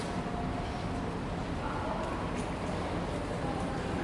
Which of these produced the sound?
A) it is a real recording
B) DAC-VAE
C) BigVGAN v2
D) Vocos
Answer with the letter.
A